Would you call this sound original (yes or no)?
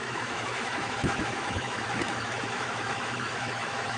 no